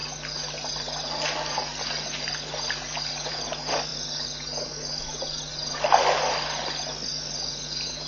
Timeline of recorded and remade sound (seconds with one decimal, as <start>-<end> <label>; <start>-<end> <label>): 0.0-8.1 recorded